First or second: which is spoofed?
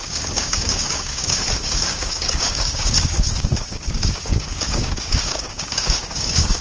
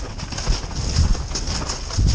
first